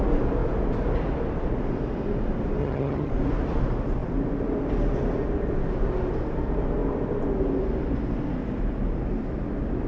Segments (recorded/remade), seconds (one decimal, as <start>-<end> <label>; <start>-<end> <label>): 0.0-2.6 recorded; 2.6-3.1 remade; 3.1-9.9 recorded